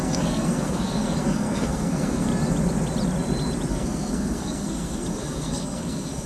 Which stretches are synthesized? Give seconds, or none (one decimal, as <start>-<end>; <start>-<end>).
0.0-2.3; 3.7-6.3